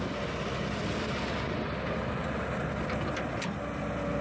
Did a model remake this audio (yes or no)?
no